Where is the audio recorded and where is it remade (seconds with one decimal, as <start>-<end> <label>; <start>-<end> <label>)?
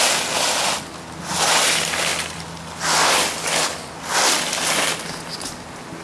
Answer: 0.0-6.0 recorded